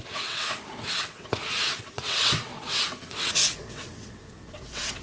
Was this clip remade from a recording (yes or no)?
yes